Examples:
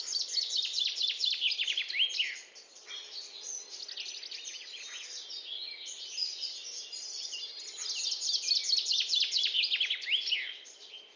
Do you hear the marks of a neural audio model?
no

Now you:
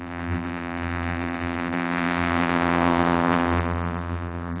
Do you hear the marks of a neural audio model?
yes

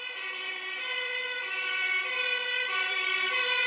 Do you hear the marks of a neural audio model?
yes